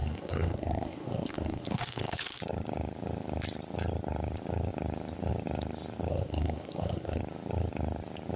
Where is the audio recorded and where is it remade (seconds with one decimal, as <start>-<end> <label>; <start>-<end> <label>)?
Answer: 0.0-2.4 remade; 2.4-6.1 recorded; 6.1-7.2 remade; 7.2-8.4 recorded